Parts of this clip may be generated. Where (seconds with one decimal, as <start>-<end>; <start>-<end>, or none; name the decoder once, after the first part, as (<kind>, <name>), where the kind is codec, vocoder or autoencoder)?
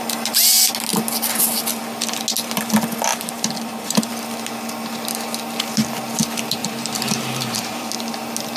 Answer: 3.1-4.1 (vocoder, BigVGAN v2); 6.6-7.9